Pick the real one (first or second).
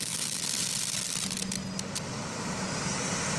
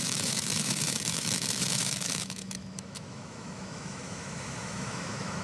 first